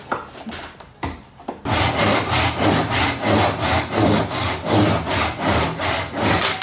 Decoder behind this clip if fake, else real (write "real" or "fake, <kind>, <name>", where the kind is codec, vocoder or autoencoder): real